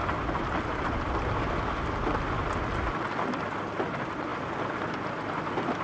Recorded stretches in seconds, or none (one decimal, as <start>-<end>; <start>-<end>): 0.0-5.8